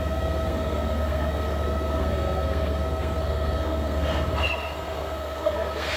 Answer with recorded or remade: remade